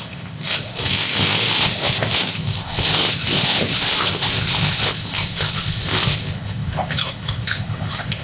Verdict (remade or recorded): remade